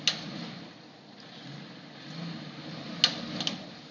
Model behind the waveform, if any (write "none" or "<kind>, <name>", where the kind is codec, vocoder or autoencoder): none